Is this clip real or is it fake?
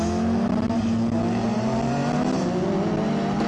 real